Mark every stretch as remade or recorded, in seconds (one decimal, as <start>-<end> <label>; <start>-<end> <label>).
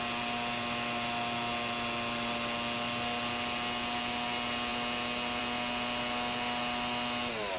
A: 0.0-7.6 recorded